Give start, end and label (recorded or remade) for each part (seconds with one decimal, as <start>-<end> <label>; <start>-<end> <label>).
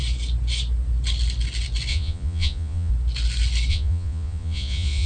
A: 0.0-1.9 recorded; 1.9-2.9 remade; 2.9-3.7 recorded; 3.7-5.1 remade